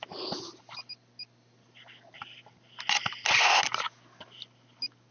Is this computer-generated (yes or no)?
no